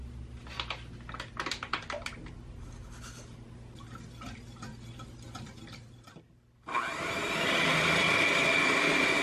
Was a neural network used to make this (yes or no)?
no